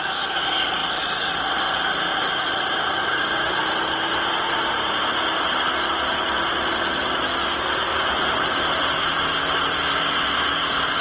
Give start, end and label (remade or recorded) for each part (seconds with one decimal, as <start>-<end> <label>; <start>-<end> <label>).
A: 0.0-2.1 recorded; 2.1-2.8 remade; 2.8-11.0 recorded